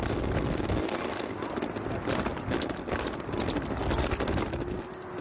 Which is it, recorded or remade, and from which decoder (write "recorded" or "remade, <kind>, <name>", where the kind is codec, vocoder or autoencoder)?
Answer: recorded